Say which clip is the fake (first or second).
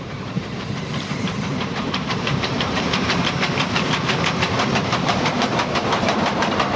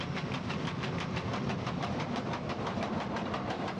first